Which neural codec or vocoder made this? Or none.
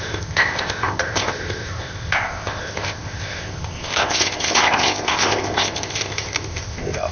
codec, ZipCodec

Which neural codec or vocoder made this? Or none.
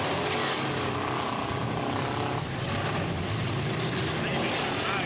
none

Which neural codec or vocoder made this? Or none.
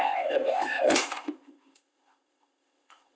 codec, ZipCodec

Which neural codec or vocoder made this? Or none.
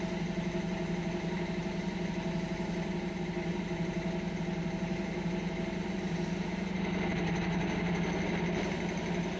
none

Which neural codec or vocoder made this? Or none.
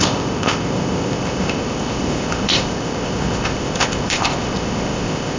codec, ZipCodec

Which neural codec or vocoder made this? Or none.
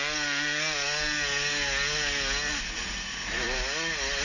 none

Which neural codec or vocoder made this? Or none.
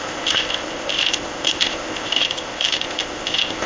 codec, ZipCodec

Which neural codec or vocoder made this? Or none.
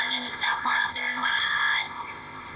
codec, ZipCodec